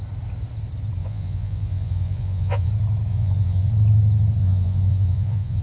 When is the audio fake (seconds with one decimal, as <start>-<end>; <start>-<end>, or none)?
1.0-2.7; 3.1-3.7; 4.4-5.6